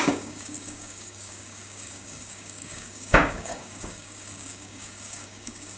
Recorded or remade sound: remade